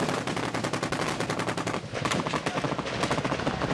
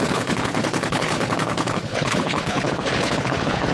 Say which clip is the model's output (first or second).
second